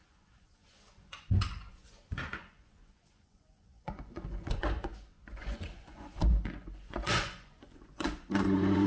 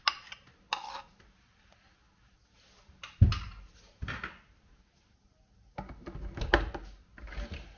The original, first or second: second